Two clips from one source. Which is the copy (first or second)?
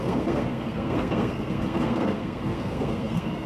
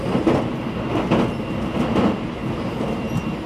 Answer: first